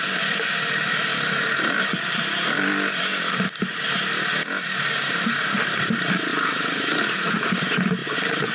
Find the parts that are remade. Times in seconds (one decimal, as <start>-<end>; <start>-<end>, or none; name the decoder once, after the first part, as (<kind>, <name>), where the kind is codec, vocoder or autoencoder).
6.3-7.5 (vocoder, Vocos)